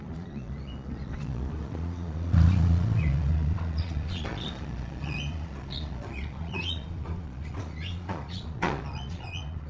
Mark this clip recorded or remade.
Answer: remade